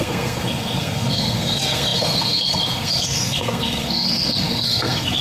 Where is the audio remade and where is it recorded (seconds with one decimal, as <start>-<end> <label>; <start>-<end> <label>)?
0.0-5.2 remade